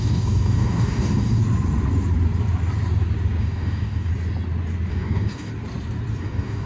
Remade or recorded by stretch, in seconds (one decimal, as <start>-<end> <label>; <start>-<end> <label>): 0.0-1.4 remade; 1.4-3.4 recorded; 3.4-4.1 remade; 4.1-4.9 recorded; 4.9-5.5 remade; 5.5-6.2 recorded; 6.2-6.7 remade